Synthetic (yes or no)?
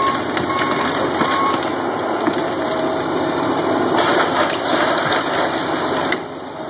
yes